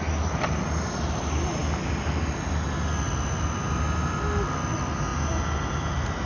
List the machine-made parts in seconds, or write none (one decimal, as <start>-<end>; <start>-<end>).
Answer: none